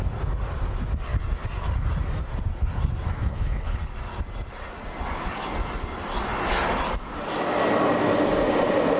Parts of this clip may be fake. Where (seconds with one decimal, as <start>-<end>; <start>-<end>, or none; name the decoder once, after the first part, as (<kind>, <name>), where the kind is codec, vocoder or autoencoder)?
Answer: 3.2-3.9 (codec, HILCodec)